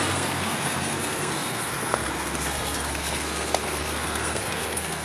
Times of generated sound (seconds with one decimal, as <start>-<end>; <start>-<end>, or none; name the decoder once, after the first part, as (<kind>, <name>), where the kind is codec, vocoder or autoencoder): 0.0-5.0 (codec, SNAC)